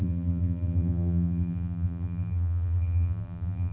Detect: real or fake fake